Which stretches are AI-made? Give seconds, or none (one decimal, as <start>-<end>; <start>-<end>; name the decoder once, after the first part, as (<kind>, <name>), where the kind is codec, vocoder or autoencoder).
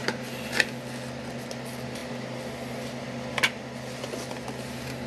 none